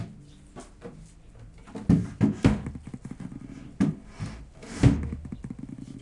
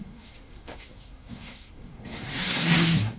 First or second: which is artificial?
second